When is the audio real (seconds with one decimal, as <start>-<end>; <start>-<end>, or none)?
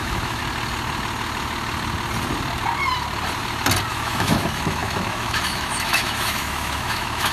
0.4-3.9